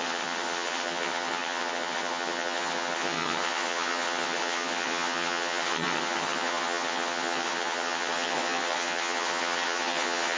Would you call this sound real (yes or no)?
no